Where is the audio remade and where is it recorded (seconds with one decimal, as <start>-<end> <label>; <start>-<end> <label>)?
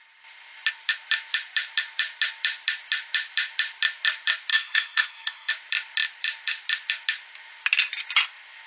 0.0-4.5 recorded; 4.5-5.5 remade; 5.5-8.7 recorded